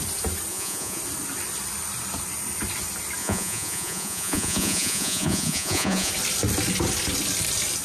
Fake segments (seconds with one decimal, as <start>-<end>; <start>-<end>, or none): 0.5-1.0; 3.2-6.1